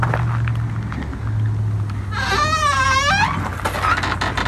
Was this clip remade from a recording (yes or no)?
no